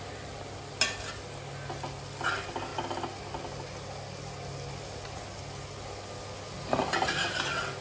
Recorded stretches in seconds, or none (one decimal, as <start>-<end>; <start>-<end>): 0.0-7.8